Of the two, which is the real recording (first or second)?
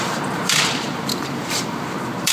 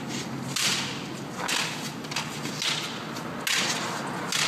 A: second